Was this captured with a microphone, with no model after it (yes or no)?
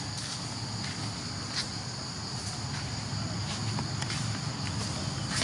yes